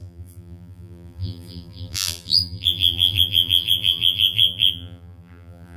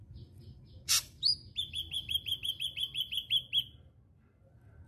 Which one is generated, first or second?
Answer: first